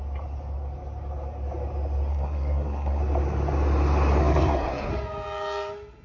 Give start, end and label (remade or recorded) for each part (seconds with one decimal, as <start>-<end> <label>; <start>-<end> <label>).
0.0-2.1 recorded; 2.1-3.0 remade; 3.0-4.2 recorded; 4.2-4.9 remade; 4.9-6.0 recorded